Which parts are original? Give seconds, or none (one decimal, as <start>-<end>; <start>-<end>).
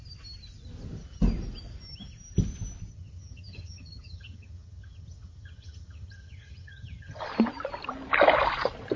0.0-2.9; 7.2-9.0